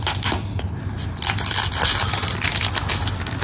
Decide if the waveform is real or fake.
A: real